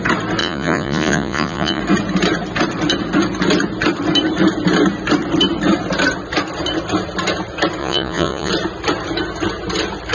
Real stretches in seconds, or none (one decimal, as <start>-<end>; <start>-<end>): 0.0-0.4; 1.8-7.8; 8.5-10.1